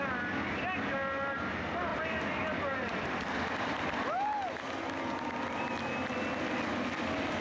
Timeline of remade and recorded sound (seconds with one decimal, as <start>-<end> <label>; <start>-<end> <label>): 0.0-1.9 recorded; 1.9-4.5 remade; 4.5-7.4 recorded